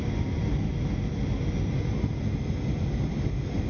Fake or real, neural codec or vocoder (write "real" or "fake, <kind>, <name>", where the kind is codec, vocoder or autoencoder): real